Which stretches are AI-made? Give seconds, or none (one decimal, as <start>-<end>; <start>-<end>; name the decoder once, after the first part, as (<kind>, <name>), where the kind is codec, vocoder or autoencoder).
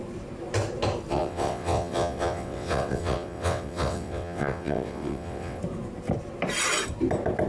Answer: 1.1-5.6 (vocoder, WaveNeXt)